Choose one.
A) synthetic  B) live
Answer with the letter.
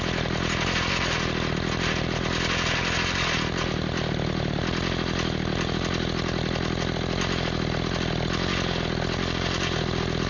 B